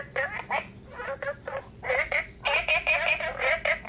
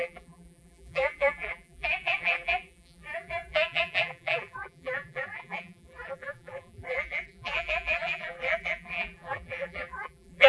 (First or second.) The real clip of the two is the first